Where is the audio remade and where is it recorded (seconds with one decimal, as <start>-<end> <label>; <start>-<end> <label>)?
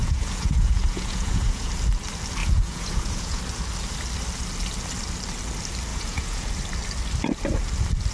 0.0-1.7 remade; 1.7-2.4 recorded; 2.4-3.4 remade; 3.4-5.9 recorded; 5.9-6.5 remade; 6.5-8.1 recorded